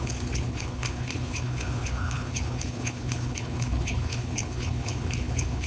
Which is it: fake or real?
fake